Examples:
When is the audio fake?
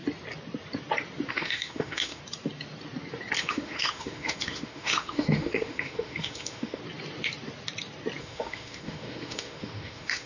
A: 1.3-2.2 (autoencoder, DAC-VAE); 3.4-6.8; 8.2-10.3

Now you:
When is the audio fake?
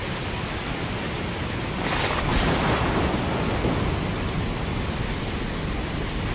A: 0.0-1.3 (vocoder, BigVGAN v2)